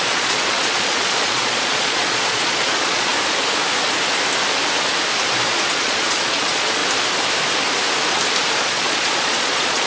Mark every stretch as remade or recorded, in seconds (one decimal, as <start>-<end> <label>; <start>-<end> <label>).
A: 0.0-3.1 remade; 3.1-5.5 recorded; 5.5-6.8 remade; 6.8-8.6 recorded; 8.6-9.9 remade